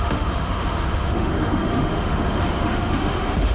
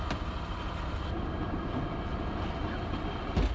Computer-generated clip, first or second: first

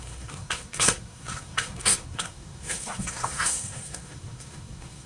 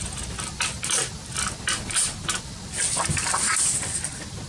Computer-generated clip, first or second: first